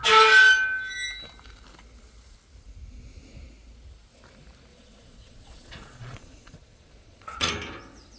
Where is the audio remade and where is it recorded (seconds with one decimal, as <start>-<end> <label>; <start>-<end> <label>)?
0.0-4.7 recorded; 4.7-7.5 remade; 7.5-8.2 recorded